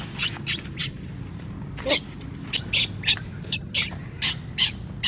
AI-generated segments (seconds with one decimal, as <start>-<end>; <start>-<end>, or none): 0.8-1.5